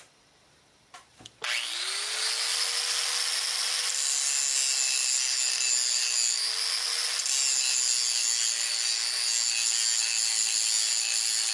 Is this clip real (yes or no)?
yes